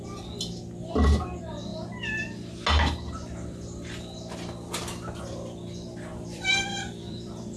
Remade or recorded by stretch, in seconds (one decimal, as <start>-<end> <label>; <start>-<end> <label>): 0.0-6.1 recorded; 6.1-7.6 remade